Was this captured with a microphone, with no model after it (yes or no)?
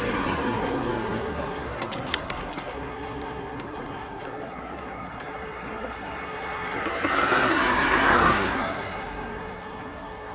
no